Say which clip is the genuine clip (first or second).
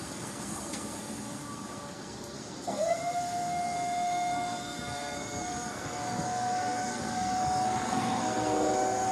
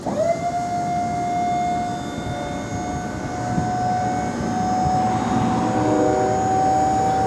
second